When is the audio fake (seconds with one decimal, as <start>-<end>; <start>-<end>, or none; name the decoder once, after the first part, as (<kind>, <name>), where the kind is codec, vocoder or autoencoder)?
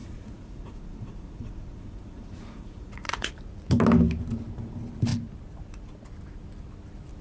0.0-3.3 (vocoder, Vocos)